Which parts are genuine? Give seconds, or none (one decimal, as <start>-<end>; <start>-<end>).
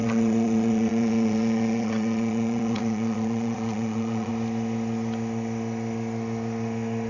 4.3-7.1